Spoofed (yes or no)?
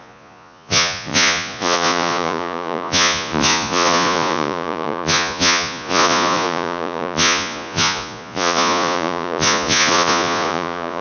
yes